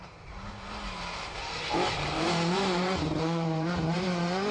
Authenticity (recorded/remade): remade